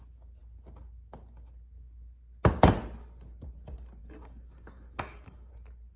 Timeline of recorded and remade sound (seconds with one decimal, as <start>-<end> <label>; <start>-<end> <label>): 0.0-4.0 recorded; 4.0-5.5 remade; 5.5-6.0 recorded